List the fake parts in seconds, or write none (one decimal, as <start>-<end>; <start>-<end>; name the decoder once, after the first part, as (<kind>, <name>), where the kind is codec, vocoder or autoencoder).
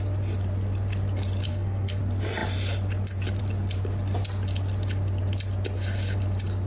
1.5-2.0 (codec, SNAC)